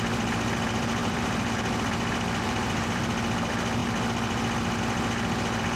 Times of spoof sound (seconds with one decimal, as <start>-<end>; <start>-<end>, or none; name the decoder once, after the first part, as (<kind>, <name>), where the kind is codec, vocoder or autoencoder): 1.0-1.5 (vocoder, BigVGAN v2); 2.4-3.0